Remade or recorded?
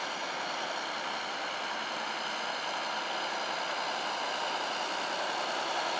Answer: recorded